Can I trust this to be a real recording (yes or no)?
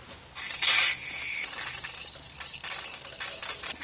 yes